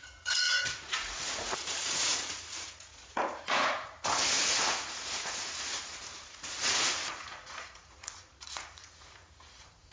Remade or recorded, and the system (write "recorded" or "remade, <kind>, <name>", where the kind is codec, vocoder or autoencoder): remade, vocoder, Vocos